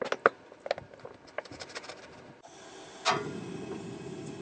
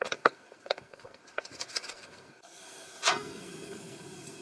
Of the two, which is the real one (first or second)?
first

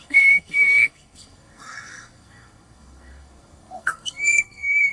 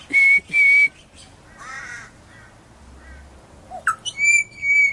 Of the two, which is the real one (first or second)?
second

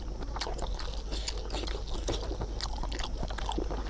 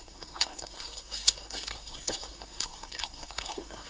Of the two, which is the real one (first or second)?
first